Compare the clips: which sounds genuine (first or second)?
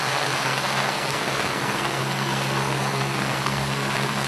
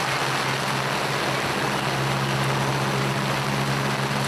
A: second